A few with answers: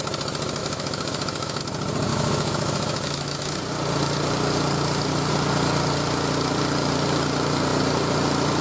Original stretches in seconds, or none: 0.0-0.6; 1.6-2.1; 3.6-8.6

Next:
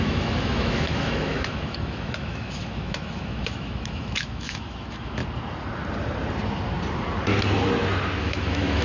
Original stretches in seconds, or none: 5.2-8.2

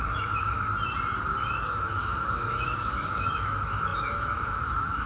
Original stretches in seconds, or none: 0.7-1.5